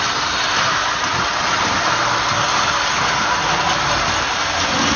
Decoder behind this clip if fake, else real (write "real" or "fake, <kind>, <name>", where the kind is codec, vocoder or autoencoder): real